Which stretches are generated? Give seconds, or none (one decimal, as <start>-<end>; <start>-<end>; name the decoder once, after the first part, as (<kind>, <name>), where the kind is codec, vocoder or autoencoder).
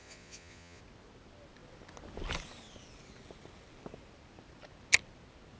0.0-0.8 (vocoder, Vocos)